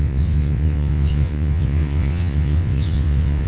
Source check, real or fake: fake